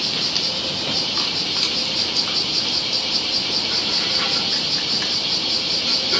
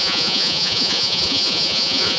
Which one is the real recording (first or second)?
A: first